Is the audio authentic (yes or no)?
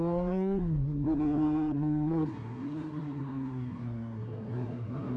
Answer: no